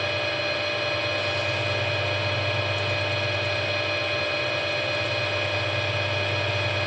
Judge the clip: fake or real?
real